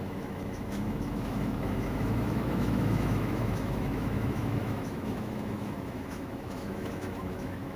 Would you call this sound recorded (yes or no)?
no